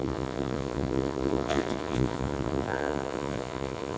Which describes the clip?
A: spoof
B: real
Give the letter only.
A